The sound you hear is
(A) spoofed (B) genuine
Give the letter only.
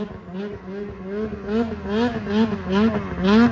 B